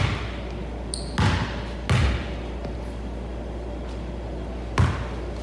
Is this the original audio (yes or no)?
yes